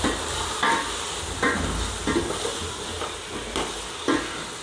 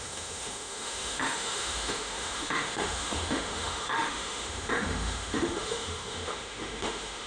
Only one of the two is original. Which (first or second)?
first